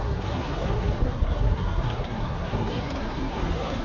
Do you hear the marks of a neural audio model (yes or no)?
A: yes